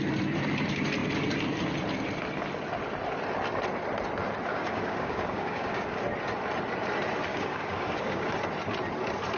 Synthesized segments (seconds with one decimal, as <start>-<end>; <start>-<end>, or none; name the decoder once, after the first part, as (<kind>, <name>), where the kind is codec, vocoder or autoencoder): 4.5-6.0 (codec, DAC); 7.3-8.4